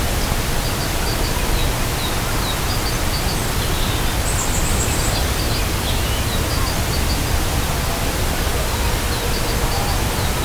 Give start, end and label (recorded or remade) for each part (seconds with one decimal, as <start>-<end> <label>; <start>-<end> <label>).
0.0-4.7 recorded; 4.7-5.4 remade; 5.4-10.4 recorded